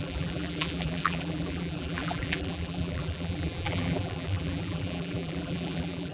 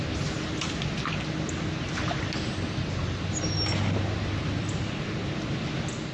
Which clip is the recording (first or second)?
second